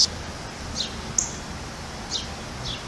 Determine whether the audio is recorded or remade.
recorded